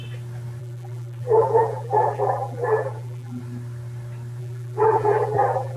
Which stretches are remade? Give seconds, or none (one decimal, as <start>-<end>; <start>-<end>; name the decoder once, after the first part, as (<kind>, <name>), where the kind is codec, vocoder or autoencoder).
0.6-3.4 (vocoder, BigVGAN v2); 4.4-5.8